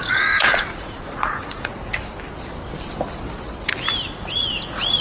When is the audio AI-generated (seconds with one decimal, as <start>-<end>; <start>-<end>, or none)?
0.0-1.9; 4.1-5.0